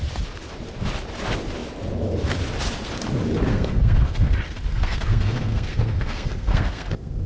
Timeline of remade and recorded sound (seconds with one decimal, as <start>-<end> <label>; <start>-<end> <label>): 0.0-3.5 recorded; 3.5-4.3 remade; 4.3-4.7 recorded; 4.7-7.3 remade